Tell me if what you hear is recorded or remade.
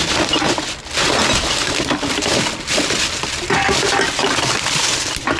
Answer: recorded